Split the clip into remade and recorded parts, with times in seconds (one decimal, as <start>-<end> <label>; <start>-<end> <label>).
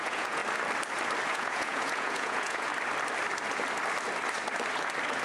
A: 0.0-0.4 remade; 0.4-1.3 recorded; 1.3-2.7 remade; 2.7-5.2 recorded